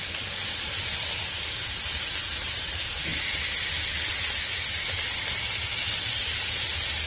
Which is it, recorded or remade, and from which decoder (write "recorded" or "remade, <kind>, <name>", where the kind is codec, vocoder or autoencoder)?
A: recorded